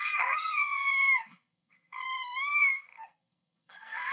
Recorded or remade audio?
remade